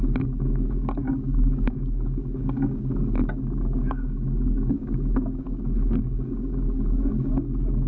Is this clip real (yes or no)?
no